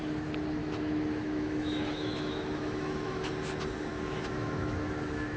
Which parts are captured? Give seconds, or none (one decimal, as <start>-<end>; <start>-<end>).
0.0-0.6; 3.3-3.9